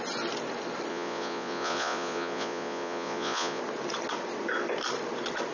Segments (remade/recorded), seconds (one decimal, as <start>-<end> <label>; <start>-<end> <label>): 0.0-0.9 recorded; 0.9-3.6 remade; 3.6-5.5 recorded